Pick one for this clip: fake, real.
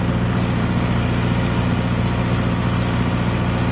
real